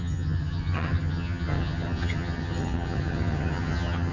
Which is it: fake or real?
fake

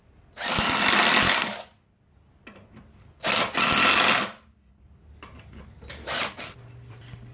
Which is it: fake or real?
real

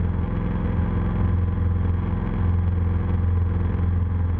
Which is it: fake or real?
real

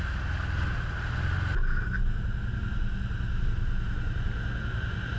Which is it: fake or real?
real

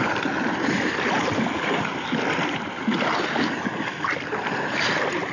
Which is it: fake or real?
real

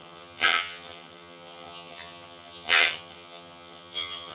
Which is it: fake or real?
fake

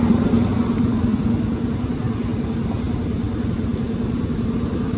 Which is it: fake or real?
real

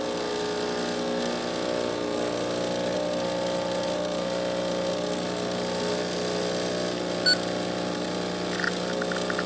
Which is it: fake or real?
real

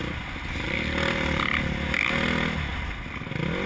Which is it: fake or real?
real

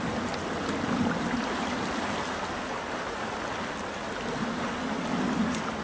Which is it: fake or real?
real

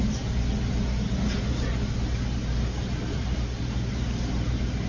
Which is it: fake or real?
real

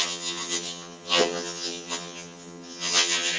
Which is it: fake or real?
fake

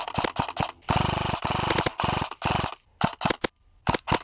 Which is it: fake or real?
real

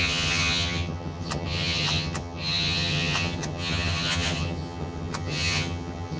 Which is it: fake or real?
fake